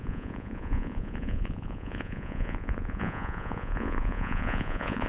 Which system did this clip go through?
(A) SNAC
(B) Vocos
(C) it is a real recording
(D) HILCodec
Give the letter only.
B